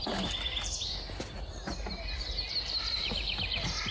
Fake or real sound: real